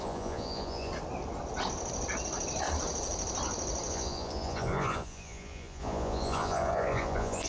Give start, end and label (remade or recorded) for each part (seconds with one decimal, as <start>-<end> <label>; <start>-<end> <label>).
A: 0.0-0.9 remade; 0.9-3.9 recorded; 3.9-7.5 remade